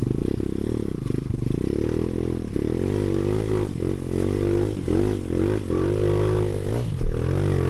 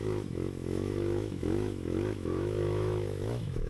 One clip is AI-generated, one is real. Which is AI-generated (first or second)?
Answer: second